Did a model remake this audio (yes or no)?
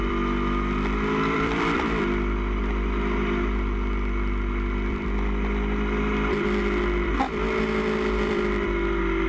yes